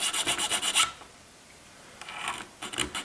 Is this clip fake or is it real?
real